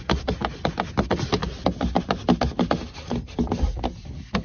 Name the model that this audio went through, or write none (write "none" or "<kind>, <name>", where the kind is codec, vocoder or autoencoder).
none